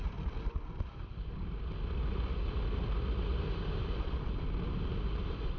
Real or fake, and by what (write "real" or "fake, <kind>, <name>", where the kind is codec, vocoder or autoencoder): real